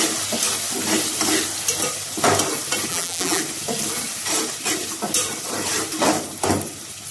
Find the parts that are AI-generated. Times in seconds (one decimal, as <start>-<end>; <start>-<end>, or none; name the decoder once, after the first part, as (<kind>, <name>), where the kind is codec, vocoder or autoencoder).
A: 2.9-3.4 (vocoder, BigVGAN v2)